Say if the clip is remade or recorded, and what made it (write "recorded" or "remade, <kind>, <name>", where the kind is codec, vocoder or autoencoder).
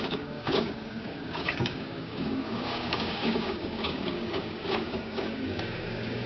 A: remade, codec, DAC